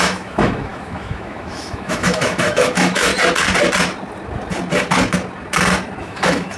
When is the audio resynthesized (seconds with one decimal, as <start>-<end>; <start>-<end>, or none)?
0.0-3.1; 6.0-6.6

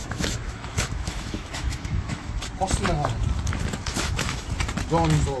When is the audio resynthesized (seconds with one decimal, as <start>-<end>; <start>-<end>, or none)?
0.0-2.4; 3.9-4.5

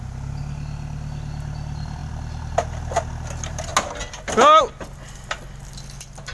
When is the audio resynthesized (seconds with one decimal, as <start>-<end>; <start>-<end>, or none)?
none

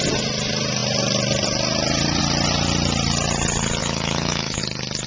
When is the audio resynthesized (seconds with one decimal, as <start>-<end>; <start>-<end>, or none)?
3.8-4.6

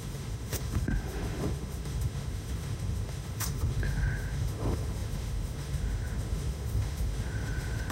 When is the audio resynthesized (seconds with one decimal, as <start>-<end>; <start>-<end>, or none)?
0.0-7.9

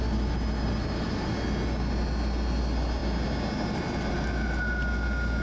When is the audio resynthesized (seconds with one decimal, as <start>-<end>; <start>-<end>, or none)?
none